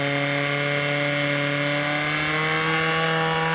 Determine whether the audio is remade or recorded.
recorded